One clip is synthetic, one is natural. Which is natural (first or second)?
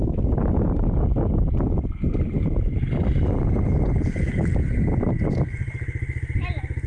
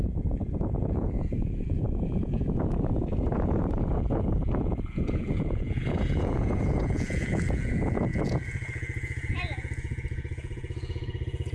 first